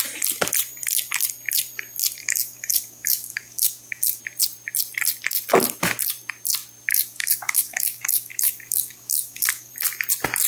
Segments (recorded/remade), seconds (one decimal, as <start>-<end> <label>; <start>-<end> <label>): 0.0-2.2 recorded; 2.2-4.2 remade; 4.2-6.9 recorded; 6.9-9.7 remade; 9.7-10.5 recorded